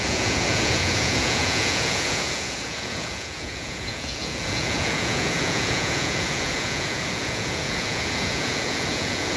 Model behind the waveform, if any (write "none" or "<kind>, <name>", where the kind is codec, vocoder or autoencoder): vocoder, Vocos